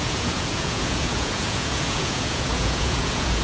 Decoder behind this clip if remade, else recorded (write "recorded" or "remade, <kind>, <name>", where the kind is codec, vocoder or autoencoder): remade, vocoder, Vocos